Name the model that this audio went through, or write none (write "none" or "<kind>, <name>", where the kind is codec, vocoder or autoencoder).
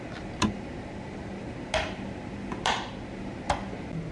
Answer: none